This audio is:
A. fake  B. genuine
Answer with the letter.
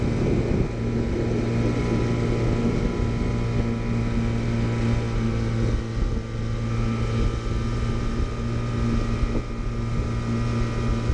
B